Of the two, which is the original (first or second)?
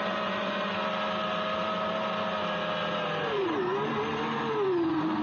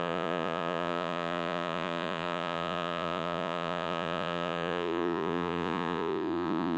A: first